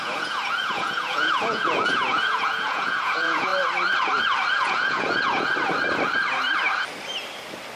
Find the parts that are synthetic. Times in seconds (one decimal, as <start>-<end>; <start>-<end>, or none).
0.0-3.5; 4.5-5.5